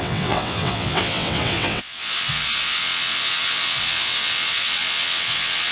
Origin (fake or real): fake